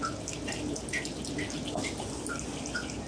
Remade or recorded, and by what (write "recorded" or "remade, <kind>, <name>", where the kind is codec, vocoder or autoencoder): recorded